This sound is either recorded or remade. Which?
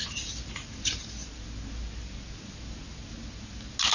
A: recorded